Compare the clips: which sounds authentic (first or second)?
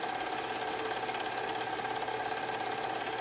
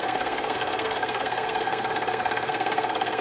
first